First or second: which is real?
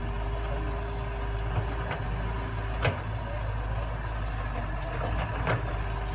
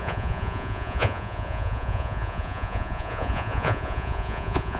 first